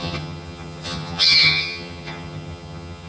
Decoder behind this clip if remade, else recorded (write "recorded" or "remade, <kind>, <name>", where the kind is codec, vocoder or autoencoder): remade, vocoder, HiFi-GAN